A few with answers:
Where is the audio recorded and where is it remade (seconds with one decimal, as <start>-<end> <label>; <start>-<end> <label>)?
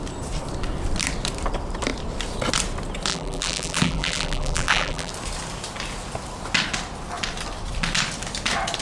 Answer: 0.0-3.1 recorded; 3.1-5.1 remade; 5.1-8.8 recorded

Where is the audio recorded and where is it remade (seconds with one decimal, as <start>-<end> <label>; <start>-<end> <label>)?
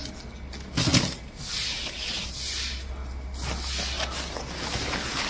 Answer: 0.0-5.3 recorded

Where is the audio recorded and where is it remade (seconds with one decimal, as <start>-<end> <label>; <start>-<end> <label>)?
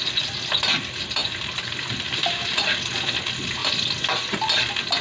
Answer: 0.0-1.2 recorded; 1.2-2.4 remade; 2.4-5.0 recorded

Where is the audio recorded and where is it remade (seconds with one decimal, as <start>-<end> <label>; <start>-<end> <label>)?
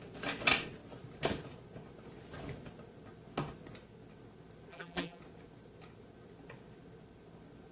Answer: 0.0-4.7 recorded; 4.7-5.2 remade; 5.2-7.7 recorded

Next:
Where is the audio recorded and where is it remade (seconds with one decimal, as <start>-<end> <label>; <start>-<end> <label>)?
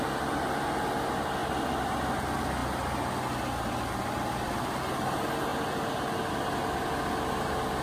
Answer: 0.0-1.4 recorded; 1.4-2.1 remade; 2.1-7.8 recorded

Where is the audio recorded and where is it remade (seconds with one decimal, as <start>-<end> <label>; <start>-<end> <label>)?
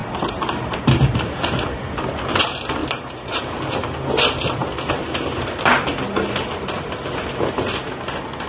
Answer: 0.0-2.4 remade; 2.4-2.8 recorded; 2.8-3.4 remade; 3.4-8.5 recorded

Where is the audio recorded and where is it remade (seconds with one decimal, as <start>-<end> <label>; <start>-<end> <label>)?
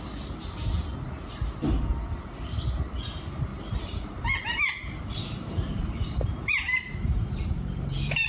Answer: 0.0-3.5 recorded; 3.5-8.3 remade